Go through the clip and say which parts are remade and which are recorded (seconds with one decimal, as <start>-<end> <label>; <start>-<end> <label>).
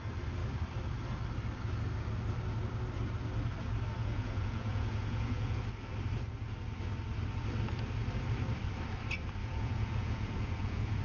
0.0-4.0 recorded; 4.0-5.6 remade; 5.6-9.4 recorded; 9.4-11.0 remade